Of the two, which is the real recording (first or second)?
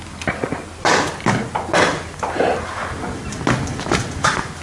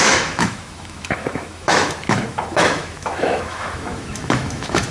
first